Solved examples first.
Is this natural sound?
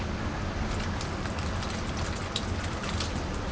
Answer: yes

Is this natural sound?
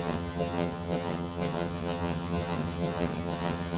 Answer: no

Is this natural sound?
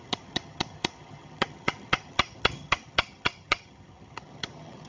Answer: no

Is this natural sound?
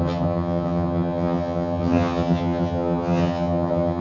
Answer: no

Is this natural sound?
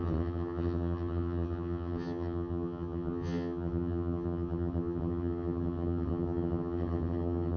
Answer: no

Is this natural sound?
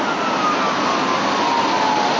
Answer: yes